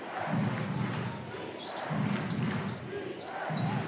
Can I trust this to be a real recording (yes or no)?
yes